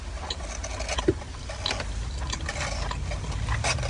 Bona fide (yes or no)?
yes